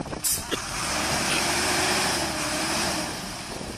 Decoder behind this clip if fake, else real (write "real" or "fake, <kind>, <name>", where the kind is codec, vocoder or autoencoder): fake, vocoder, BigVGAN v2